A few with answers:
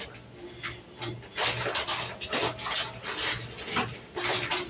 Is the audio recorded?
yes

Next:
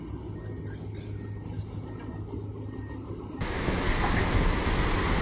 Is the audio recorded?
yes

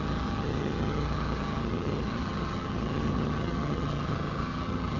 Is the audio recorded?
no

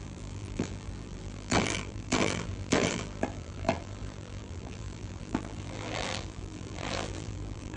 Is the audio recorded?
no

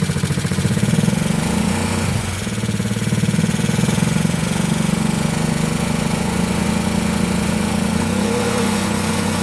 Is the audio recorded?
no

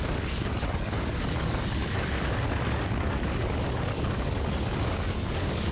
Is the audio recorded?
no